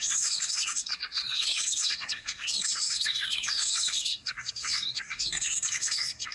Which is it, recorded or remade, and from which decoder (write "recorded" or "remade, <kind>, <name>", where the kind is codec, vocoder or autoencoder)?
remade, codec, SNAC